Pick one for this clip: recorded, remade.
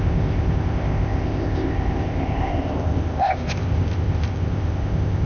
remade